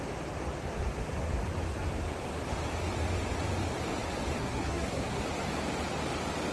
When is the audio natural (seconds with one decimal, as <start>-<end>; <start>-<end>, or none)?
0.0-4.4; 5.2-6.5